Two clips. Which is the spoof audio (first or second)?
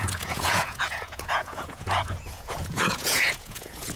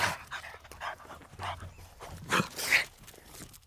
first